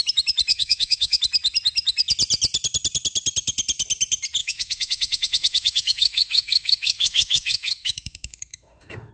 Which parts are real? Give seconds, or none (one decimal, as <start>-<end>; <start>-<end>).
0.0-0.5; 1.2-4.4